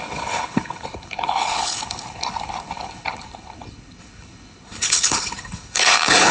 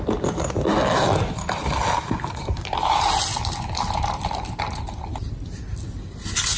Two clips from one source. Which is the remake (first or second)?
first